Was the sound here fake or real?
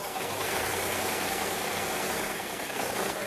fake